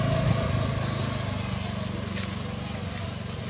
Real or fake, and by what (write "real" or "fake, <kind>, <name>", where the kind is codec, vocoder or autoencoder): real